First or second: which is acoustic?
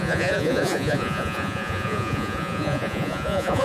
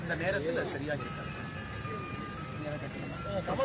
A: second